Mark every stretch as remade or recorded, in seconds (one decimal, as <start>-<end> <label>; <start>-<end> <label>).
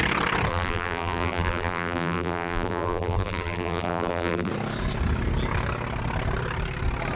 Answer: 0.0-0.5 recorded; 0.5-4.5 remade; 4.5-7.2 recorded